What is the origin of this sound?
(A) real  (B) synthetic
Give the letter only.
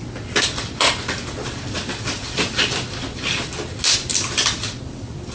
A